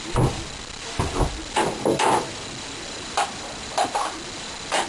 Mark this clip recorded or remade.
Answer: recorded